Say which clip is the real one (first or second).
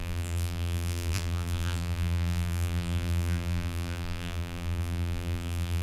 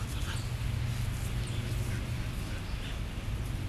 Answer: second